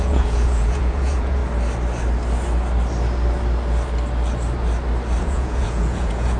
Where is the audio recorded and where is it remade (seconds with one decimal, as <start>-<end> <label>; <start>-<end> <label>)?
0.0-1.4 remade; 1.4-5.2 recorded; 5.2-6.4 remade